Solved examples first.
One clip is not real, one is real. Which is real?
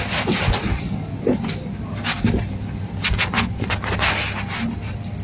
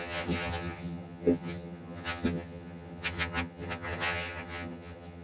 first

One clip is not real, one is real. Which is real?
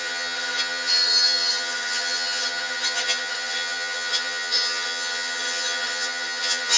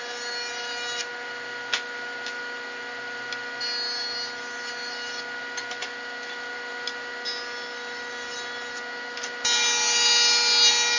second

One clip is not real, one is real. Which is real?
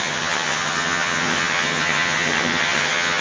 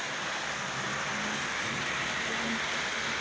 second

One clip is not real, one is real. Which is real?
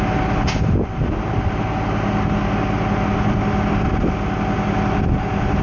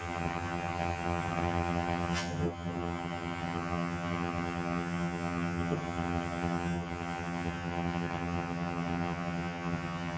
first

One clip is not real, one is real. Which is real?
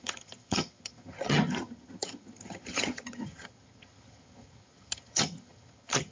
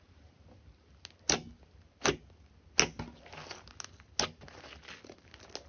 second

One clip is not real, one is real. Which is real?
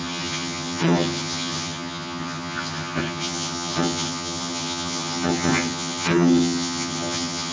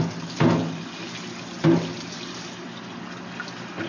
second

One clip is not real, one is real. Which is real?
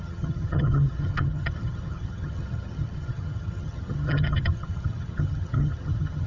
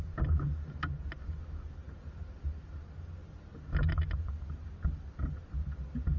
second